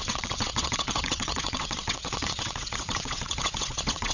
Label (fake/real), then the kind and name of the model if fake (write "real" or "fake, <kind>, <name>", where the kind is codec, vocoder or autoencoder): fake, vocoder, WaveNeXt